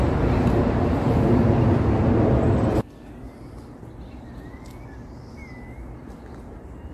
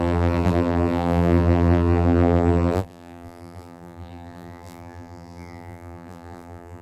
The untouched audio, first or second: first